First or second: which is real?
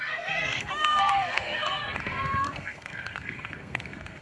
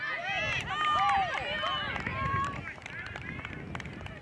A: second